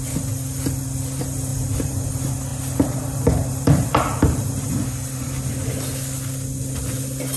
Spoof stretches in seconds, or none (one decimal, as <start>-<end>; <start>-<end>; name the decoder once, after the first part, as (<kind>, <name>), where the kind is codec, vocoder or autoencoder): 1.5-2.1 (vocoder, BigVGAN v2); 2.5-5.5